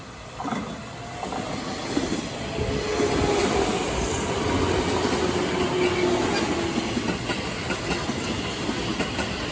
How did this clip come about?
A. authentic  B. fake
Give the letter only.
A